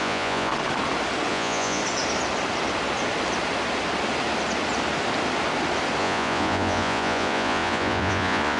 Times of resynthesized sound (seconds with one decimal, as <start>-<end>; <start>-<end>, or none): 0.0-0.5; 1.3-1.8; 6.0-8.6